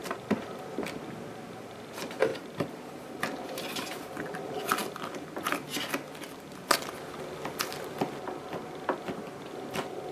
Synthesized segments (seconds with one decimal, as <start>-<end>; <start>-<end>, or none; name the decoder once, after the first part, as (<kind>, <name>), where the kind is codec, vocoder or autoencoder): 2.3-3.2 (vocoder, BigVGAN v2)